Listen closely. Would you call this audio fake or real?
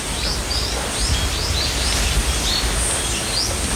real